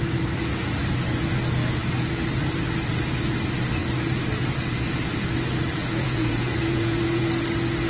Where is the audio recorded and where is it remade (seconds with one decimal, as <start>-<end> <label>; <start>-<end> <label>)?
0.0-5.8 recorded; 5.8-7.2 remade; 7.2-7.9 recorded